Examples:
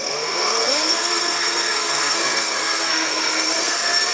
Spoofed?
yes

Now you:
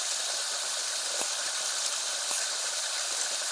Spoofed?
no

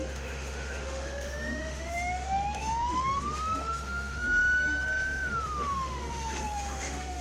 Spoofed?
yes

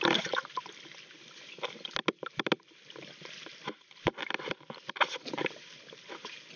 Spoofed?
no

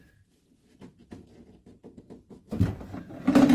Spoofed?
yes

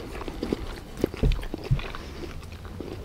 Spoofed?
no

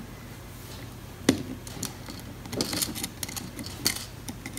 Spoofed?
no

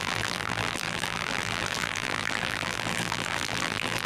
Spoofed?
yes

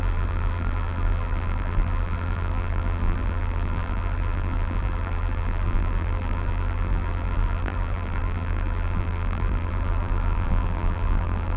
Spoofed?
yes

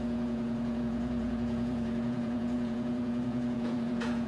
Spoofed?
yes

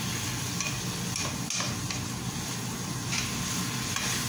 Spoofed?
no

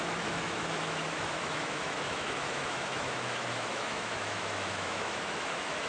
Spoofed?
yes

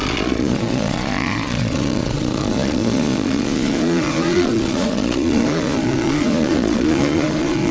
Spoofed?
yes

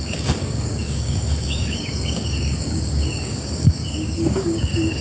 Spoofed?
yes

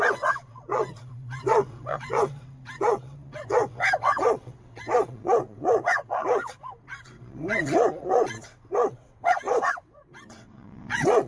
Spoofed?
yes